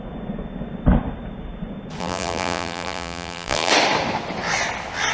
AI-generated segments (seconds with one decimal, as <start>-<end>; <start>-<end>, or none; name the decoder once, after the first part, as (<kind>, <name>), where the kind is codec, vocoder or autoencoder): 2.0-3.7 (vocoder, BigVGAN v2)